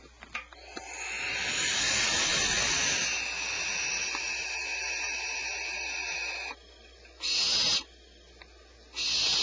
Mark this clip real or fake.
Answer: real